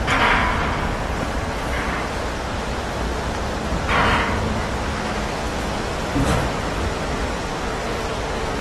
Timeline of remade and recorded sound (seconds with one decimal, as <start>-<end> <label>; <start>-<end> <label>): 0.0-7.8 recorded; 7.8-8.6 remade

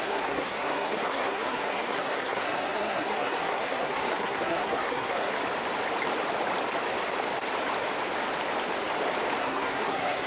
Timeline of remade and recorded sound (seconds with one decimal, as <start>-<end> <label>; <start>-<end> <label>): 0.0-5.3 remade; 5.3-9.4 recorded; 9.4-10.3 remade

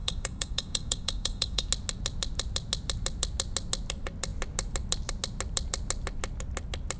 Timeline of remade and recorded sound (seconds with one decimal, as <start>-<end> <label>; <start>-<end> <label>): 0.0-1.7 remade; 1.7-7.0 recorded

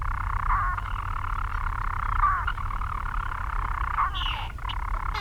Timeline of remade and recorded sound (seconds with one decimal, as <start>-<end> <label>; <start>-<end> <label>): 0.0-1.5 recorded; 1.5-4.6 remade; 4.6-5.2 recorded

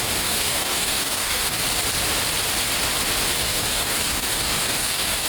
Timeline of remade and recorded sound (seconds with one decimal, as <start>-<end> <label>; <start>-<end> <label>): 0.0-1.6 remade; 1.6-3.4 recorded; 3.4-5.3 remade